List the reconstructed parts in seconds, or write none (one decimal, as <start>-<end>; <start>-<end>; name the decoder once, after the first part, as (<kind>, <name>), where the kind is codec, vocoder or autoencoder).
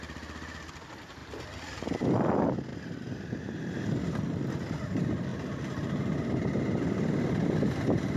2.7-3.4 (vocoder, BigVGAN v2)